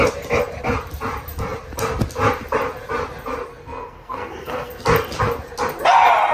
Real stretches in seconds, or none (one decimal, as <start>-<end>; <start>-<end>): 0.0-3.5; 4.7-6.3

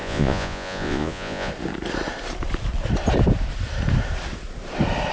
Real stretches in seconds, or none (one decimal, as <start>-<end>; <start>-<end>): 1.5-5.1

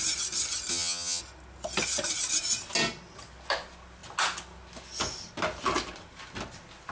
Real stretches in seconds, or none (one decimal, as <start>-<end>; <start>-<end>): 0.0-0.7; 1.2-6.9

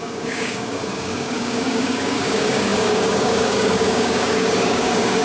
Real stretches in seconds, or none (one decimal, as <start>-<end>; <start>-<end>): none

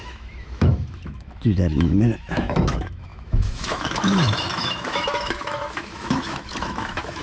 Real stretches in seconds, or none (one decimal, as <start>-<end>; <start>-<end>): none

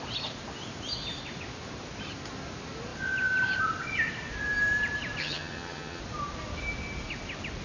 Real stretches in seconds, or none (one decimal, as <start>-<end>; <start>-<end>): 0.0-5.2; 6.0-7.6

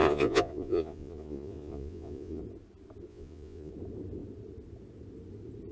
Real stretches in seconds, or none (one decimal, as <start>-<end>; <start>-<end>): 2.4-3.1; 3.7-5.7

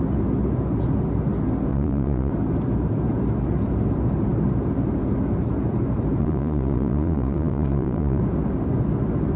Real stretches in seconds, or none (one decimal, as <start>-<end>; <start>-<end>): 0.0-1.7; 2.3-6.2; 8.2-9.4